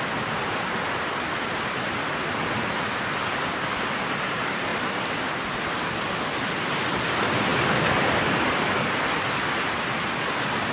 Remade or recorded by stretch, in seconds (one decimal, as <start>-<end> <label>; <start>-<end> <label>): 0.0-4.7 recorded; 4.7-5.3 remade; 5.3-7.5 recorded; 7.5-8.8 remade; 8.8-10.7 recorded